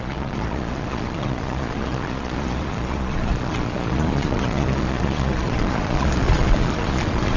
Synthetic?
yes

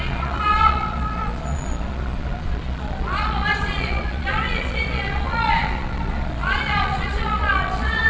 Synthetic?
yes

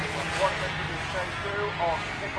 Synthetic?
no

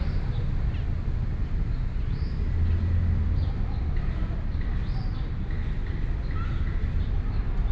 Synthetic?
no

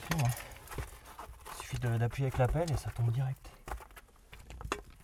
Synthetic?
no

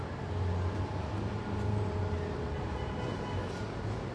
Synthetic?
no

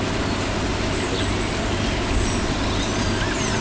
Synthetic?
no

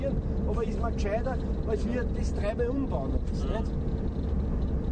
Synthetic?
no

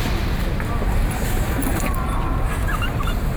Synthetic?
no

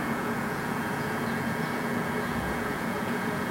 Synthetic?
yes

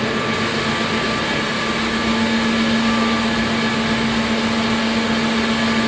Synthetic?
no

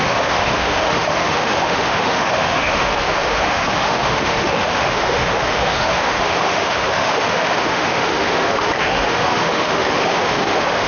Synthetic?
yes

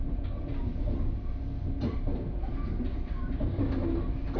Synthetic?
no